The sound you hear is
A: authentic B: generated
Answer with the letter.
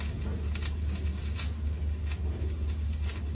A